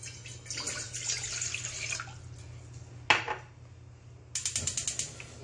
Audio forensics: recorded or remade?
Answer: recorded